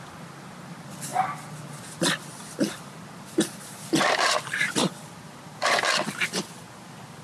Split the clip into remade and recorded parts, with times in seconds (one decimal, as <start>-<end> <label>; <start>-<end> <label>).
0.0-7.2 recorded